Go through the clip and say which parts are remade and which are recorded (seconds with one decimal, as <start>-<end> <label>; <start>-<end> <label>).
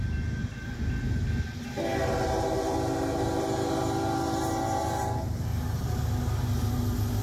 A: 0.0-0.4 recorded; 0.4-1.2 remade; 1.2-1.9 recorded; 1.9-6.0 remade; 6.0-7.2 recorded